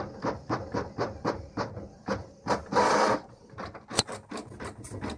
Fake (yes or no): no